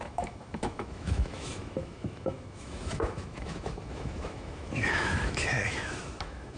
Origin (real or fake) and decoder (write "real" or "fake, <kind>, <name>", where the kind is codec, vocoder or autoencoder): fake, autoencoder, DAC-VAE